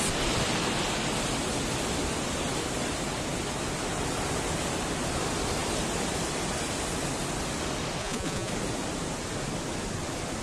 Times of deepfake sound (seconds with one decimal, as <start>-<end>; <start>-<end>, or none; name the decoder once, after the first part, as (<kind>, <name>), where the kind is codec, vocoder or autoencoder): 8.0-8.5 (vocoder, Vocos)